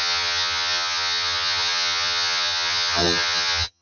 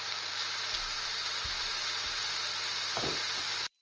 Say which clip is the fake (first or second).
first